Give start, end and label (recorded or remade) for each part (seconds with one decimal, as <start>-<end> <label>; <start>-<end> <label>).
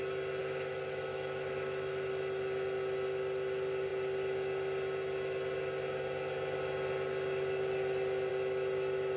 0.0-0.4 recorded; 0.4-2.1 remade; 2.1-9.2 recorded